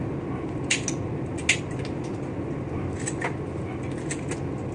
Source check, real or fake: real